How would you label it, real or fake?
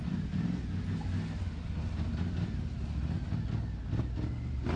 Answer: real